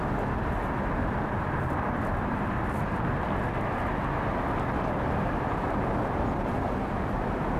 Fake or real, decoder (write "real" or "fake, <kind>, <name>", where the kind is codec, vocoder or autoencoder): real